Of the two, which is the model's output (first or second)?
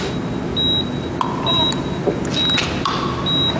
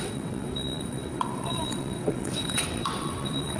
second